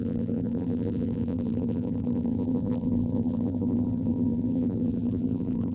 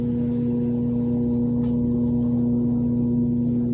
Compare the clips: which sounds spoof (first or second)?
first